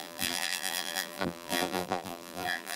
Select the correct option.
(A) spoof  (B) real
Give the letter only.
A